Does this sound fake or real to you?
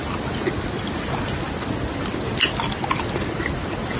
real